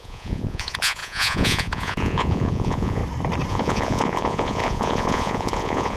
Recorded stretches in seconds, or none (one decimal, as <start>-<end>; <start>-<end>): 3.0-3.5